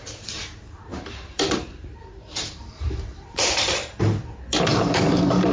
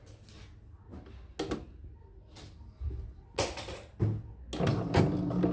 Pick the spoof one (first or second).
first